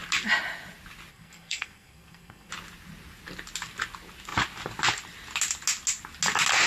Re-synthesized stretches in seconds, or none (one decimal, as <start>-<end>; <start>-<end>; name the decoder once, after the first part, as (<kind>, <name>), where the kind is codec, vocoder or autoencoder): 1.1-2.5 (codec, SNAC)